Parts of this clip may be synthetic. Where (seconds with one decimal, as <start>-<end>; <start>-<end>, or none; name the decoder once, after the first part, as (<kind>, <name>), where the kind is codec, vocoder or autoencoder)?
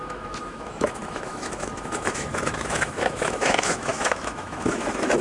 0.0-5.2 (autoencoder, DAC-VAE)